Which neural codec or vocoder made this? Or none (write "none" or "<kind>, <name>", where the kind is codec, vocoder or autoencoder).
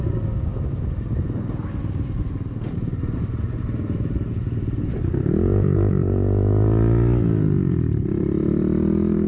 none